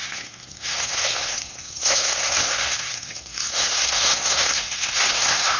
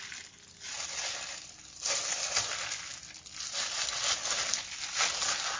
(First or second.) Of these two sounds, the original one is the second